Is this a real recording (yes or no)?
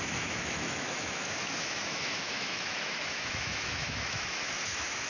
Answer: no